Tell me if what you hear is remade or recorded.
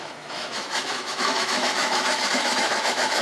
remade